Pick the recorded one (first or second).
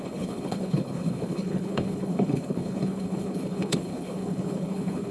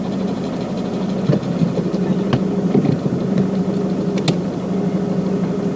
second